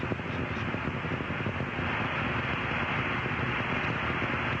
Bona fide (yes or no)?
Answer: yes